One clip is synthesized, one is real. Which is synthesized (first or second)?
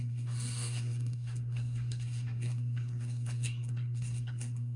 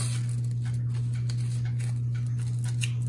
first